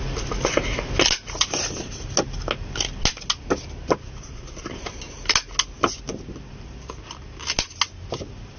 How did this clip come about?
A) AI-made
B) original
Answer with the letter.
B